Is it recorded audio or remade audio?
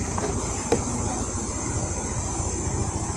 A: recorded